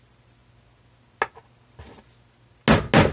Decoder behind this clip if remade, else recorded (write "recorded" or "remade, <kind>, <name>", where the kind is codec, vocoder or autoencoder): recorded